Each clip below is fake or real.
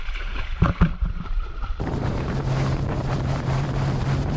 fake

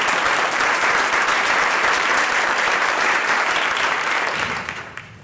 fake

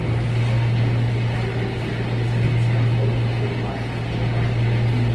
real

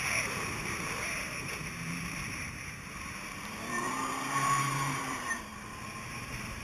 fake